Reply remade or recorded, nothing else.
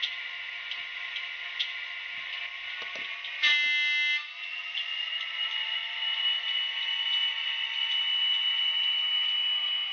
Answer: recorded